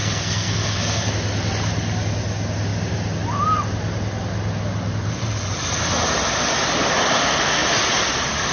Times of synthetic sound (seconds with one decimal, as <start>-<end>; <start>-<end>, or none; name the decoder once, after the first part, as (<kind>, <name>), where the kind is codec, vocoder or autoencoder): 0.0-1.1 (codec, SNAC)